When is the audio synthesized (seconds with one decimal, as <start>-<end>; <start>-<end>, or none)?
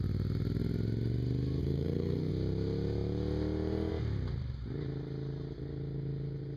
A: 1.6-2.3